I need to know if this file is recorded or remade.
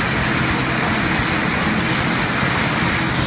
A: recorded